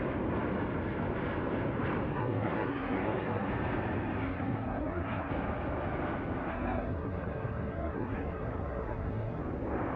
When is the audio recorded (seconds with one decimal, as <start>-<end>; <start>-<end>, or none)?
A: 0.0-2.1; 3.5-4.2; 5.3-6.5; 9.4-10.0

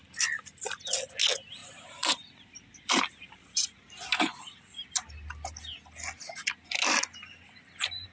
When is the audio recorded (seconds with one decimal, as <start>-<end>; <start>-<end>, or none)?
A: 0.0-1.6; 5.1-8.1

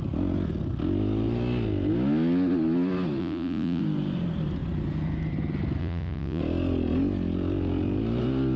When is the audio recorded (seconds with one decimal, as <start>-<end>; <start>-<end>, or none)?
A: 0.0-3.2; 3.8-5.8; 6.4-8.6

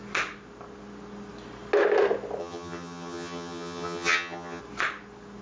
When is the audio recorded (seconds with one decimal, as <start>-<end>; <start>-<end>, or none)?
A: 0.0-2.4; 4.6-5.4

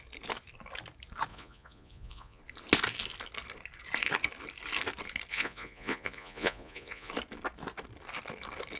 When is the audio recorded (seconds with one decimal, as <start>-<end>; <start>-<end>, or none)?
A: 0.0-1.3; 2.4-5.3; 7.1-8.8

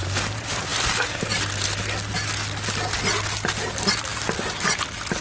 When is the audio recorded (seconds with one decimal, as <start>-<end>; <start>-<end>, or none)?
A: 0.0-5.2

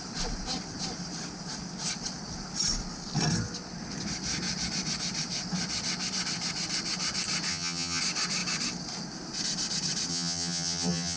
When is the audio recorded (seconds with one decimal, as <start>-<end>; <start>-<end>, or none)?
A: 0.0-7.5; 8.0-10.1

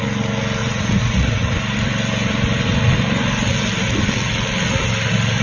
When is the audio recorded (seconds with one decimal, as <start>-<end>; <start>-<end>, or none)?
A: 0.0-0.6; 1.5-5.4